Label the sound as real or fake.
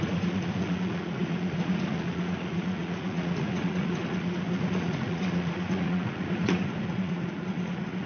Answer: fake